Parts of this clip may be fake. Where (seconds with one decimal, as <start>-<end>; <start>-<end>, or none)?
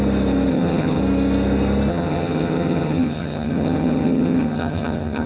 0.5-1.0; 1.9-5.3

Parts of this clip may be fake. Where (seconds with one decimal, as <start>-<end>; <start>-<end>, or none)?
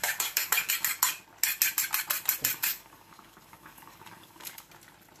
0.0-0.7; 2.6-4.7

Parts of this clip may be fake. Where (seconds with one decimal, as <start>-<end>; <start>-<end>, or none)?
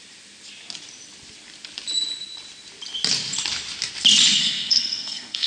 4.4-5.5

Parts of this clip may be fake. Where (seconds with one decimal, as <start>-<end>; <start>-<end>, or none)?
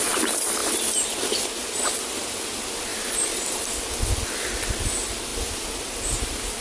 none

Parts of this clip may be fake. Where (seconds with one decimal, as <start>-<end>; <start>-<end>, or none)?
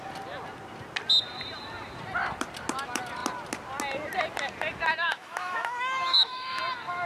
5.1-6.6